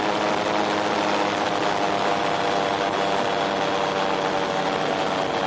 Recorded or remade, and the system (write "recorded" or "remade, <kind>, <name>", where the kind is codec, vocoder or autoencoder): recorded